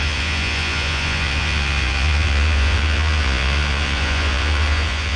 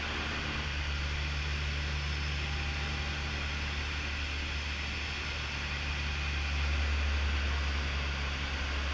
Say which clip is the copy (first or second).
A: first